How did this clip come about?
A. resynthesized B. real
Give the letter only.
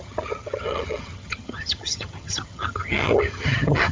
A